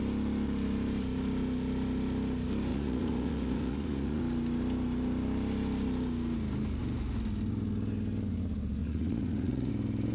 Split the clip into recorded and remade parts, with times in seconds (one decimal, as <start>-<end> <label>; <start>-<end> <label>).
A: 0.0-2.7 recorded; 2.7-4.2 remade; 4.2-8.8 recorded; 8.8-9.7 remade; 9.7-10.1 recorded